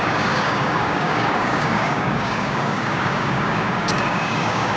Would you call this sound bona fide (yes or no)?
no